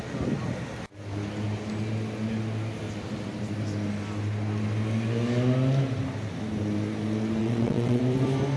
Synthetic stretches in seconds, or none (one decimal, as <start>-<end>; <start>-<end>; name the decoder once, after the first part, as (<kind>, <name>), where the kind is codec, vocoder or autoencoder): 7.4-8.0 (vocoder, WaveNeXt)